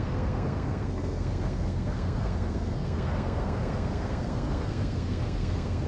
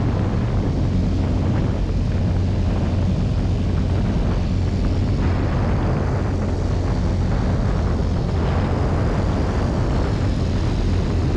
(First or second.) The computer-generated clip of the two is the first